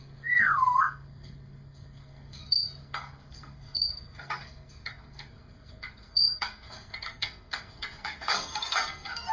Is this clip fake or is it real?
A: fake